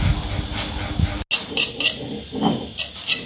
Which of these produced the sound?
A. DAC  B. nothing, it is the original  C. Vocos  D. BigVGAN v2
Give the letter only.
B